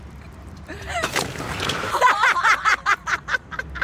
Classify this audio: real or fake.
fake